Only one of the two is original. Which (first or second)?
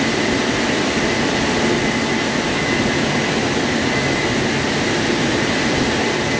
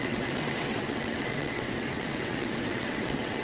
first